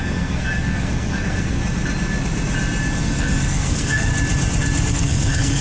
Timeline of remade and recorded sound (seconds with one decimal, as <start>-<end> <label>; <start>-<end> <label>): 0.0-1.6 remade; 1.6-3.0 recorded; 3.0-4.1 remade; 4.1-4.9 recorded; 4.9-5.6 remade

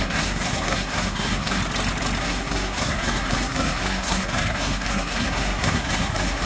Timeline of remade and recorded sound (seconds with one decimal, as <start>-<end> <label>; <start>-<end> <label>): 0.0-1.6 remade; 1.6-2.2 recorded; 2.2-6.5 remade

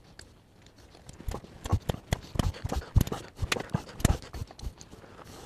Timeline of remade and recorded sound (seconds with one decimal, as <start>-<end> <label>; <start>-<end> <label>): 0.0-5.5 recorded

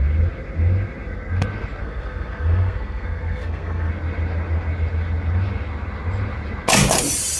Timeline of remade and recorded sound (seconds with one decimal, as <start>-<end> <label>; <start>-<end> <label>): 0.0-1.8 recorded; 1.8-3.9 remade; 3.9-7.4 recorded

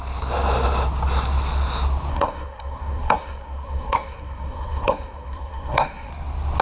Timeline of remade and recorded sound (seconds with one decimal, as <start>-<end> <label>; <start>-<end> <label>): 0.0-2.1 recorded; 2.1-6.1 remade; 6.1-6.6 recorded

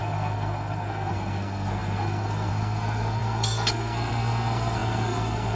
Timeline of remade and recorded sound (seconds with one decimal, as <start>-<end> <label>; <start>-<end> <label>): 0.0-5.6 remade

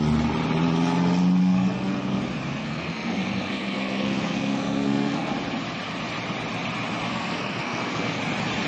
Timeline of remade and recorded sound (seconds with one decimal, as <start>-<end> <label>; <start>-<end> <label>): 0.0-1.4 recorded; 1.4-2.2 remade; 2.2-2.6 recorded; 2.6-5.3 remade; 5.3-7.1 recorded; 7.1-8.2 remade; 8.2-8.7 recorded

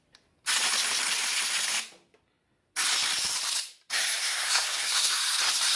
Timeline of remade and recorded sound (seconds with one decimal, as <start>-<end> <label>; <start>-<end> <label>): 0.0-4.2 recorded; 4.2-5.2 remade; 5.2-5.8 recorded